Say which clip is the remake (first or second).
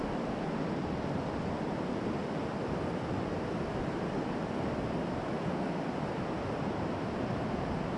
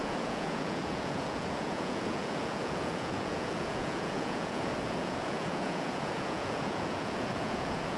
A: second